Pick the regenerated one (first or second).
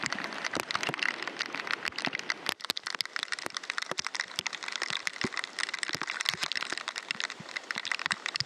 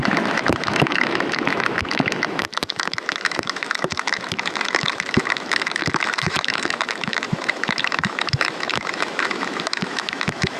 second